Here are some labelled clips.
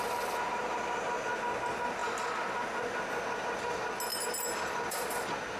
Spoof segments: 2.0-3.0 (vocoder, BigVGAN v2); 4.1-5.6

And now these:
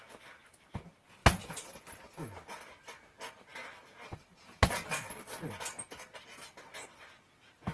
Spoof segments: none

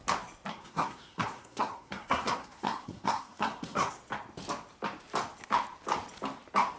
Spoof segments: 0.5-4.0 (codec, SNAC)

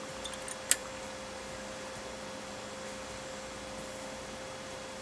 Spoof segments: none

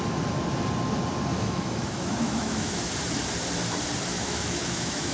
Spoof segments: 1.3-2.9 (autoencoder, DAC-VAE); 4.1-5.1